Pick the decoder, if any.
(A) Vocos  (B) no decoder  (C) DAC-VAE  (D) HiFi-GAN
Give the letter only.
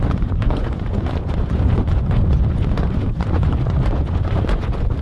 A